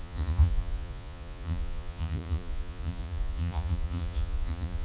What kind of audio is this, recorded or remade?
remade